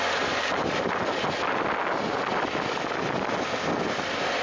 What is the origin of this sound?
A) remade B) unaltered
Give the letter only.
B